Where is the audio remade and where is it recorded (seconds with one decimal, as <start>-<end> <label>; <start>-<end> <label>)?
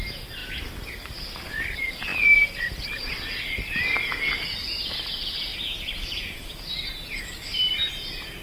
0.0-8.4 recorded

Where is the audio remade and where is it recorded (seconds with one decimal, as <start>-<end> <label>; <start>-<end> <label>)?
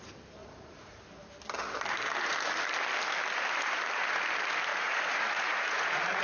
0.0-0.4 recorded; 0.4-1.0 remade; 1.0-4.7 recorded; 4.7-6.2 remade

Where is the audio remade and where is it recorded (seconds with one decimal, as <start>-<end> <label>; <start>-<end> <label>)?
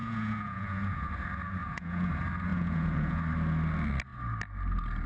0.0-1.1 remade; 1.1-1.6 recorded; 1.6-2.1 remade; 2.1-2.5 recorded; 2.5-3.2 remade; 3.2-5.1 recorded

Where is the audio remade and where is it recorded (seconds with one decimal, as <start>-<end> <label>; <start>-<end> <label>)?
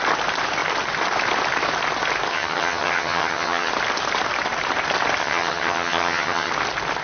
0.0-2.3 recorded; 2.3-3.7 remade; 3.7-5.2 recorded; 5.2-6.5 remade; 6.5-7.0 recorded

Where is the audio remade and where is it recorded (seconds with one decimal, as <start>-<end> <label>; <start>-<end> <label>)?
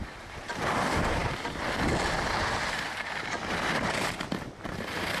0.0-0.6 remade; 0.6-5.2 recorded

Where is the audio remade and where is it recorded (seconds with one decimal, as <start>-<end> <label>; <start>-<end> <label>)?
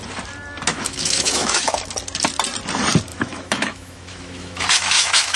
0.0-0.7 recorded; 0.7-1.8 remade; 1.8-3.1 recorded; 3.1-5.4 remade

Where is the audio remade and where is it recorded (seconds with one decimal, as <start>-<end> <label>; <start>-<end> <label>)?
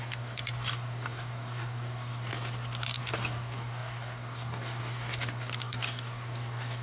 0.0-2.3 remade; 2.3-3.0 recorded; 3.0-6.8 remade